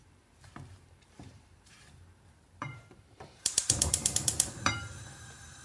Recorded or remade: remade